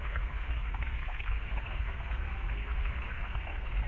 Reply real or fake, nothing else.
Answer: fake